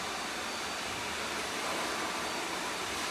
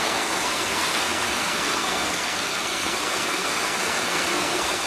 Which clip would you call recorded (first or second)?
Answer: first